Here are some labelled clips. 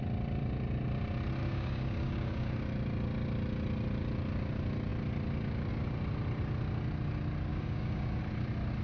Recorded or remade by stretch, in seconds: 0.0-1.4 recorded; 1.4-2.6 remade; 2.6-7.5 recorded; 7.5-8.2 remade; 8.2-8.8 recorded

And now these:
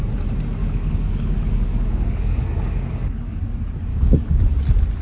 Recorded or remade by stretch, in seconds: 0.0-0.6 recorded; 0.6-3.5 remade; 3.5-3.9 recorded; 3.9-4.4 remade; 4.4-5.0 recorded